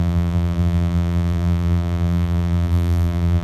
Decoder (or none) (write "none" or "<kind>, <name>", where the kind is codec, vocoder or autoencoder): vocoder, BigVGAN v2